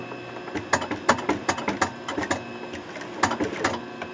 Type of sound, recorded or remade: recorded